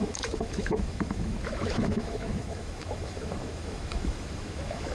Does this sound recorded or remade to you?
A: remade